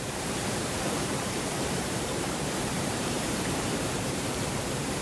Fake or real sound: fake